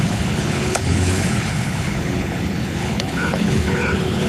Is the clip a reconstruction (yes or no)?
yes